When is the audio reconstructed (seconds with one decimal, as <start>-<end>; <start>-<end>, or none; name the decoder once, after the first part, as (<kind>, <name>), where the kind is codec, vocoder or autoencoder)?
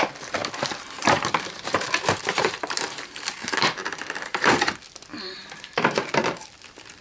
0.4-4.5 (vocoder, BigVGAN v2); 5.1-6.5